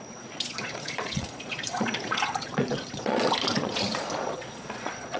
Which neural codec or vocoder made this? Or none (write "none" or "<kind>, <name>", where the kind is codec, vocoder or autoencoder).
vocoder, Vocos